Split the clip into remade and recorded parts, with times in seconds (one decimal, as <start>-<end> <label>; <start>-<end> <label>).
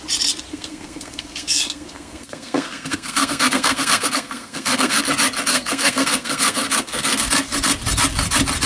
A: 0.0-0.5 recorded; 0.5-5.0 remade; 5.0-5.5 recorded; 5.5-7.3 remade; 7.3-8.7 recorded